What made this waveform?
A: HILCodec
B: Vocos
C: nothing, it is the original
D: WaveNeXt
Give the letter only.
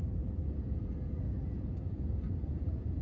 B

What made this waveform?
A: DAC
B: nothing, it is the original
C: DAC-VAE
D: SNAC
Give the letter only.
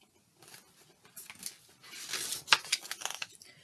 B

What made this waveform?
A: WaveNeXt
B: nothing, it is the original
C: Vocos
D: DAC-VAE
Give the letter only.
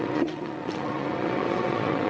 A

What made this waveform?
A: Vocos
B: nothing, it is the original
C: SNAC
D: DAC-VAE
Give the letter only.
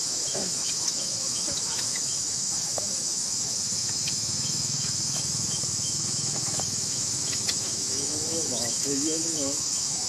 D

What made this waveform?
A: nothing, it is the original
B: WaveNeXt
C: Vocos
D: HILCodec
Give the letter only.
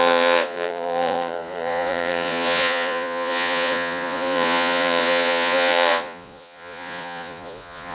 C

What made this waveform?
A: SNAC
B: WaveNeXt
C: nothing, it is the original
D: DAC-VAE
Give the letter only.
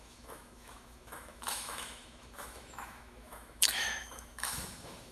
D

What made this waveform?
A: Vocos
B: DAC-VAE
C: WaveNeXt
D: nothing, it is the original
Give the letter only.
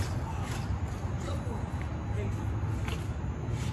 D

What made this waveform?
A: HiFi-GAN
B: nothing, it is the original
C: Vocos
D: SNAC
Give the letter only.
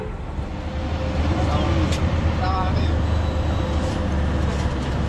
B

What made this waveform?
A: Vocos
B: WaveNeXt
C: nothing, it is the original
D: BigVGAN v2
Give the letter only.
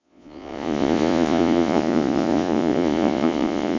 A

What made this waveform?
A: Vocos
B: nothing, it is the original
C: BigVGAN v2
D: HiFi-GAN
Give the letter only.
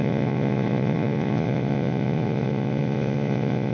A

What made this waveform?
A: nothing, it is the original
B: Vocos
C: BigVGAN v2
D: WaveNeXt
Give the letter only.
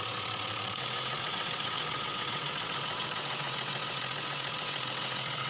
D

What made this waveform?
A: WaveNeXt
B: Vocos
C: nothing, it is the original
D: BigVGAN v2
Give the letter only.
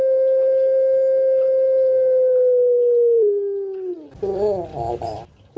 C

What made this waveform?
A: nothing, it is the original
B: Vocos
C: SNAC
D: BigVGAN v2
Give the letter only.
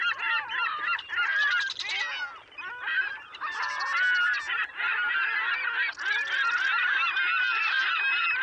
A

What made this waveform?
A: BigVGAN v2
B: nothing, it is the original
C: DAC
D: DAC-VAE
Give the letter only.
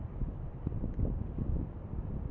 A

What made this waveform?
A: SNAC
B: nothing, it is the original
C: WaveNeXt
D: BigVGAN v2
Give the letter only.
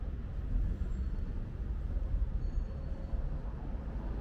B